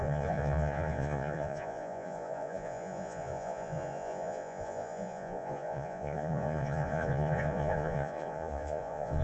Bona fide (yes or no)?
no